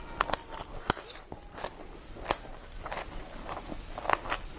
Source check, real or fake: real